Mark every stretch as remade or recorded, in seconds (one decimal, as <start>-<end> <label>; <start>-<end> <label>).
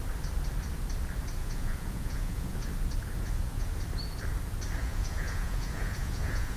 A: 0.0-1.4 recorded; 1.4-2.7 remade; 2.7-3.2 recorded; 3.2-3.7 remade; 3.7-4.8 recorded; 4.8-6.6 remade